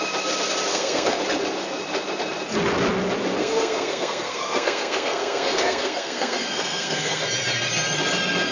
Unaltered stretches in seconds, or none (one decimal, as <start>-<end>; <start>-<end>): 0.0-0.7; 1.2-3.4; 7.2-8.5